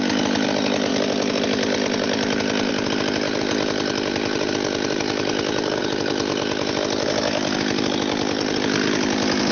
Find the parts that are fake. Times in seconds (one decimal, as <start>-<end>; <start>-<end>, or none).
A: none